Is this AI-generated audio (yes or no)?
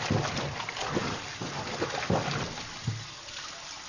no